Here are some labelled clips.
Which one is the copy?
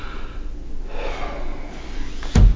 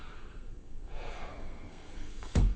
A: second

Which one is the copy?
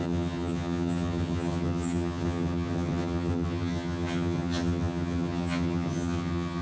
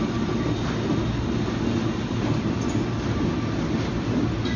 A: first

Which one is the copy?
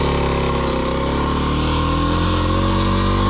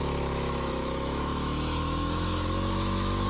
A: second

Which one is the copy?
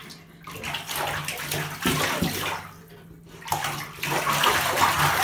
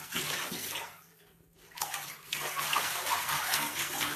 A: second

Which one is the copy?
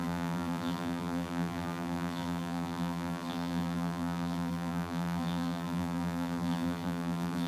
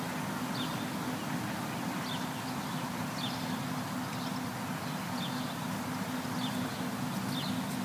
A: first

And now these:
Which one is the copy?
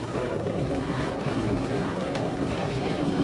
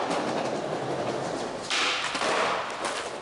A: first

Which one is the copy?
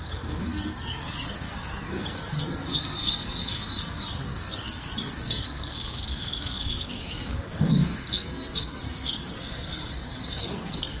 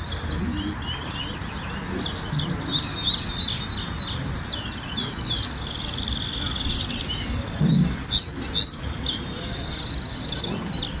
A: first